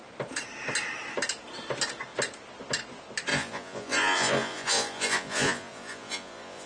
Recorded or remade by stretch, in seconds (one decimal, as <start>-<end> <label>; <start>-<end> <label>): 0.0-3.3 recorded; 3.3-6.7 remade